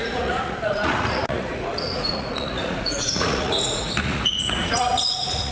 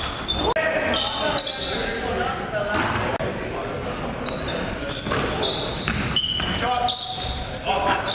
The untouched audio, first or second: second